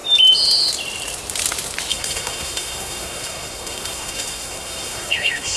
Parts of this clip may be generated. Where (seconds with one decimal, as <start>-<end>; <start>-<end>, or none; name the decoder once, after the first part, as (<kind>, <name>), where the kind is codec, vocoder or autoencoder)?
1.9-5.6 (codec, SNAC)